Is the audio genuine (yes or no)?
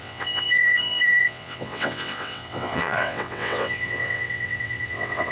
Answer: no